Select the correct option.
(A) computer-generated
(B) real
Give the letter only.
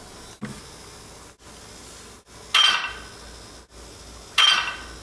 B